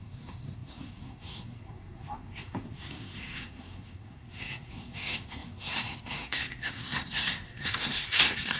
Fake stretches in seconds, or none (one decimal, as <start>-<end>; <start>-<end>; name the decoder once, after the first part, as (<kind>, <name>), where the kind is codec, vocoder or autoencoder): 0.0-8.6 (codec, SNAC)